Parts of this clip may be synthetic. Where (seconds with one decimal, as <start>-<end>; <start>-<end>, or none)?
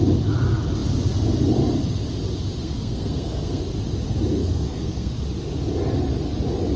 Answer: 2.6-3.6; 4.4-5.1